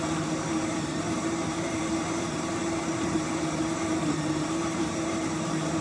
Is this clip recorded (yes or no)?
no